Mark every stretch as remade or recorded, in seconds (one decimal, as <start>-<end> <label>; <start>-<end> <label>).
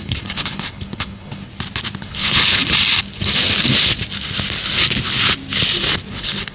0.0-1.5 remade; 1.5-2.0 recorded; 2.0-2.6 remade; 2.6-6.1 recorded; 6.1-6.5 remade